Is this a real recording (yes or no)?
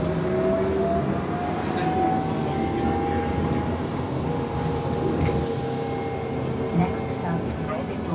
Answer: yes